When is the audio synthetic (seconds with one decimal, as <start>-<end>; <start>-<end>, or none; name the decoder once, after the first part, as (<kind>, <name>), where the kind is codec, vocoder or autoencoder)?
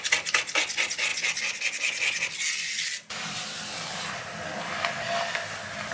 none